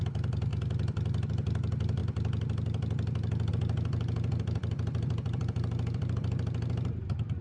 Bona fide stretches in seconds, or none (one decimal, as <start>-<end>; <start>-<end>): 0.0-7.4